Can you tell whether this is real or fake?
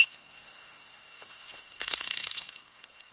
fake